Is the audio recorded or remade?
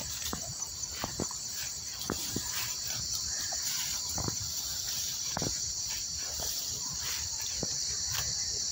remade